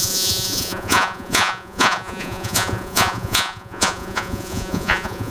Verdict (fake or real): fake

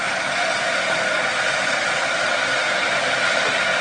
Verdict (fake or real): real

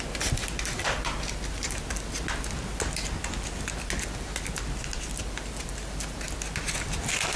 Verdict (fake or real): real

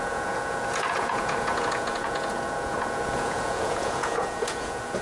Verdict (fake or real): fake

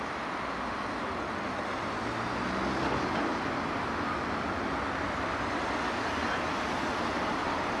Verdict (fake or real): real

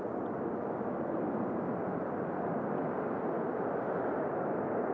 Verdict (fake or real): real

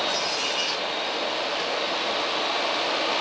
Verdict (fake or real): real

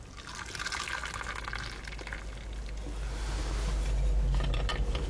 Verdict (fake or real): real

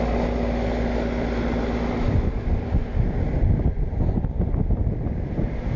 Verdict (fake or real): real